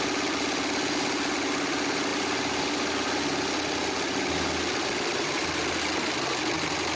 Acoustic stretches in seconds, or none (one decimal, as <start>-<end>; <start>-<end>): 0.0-7.0